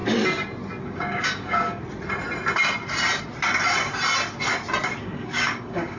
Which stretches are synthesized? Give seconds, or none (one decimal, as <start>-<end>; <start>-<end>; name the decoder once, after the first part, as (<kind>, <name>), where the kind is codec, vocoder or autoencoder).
0.8-1.8 (codec, DAC); 5.0-6.0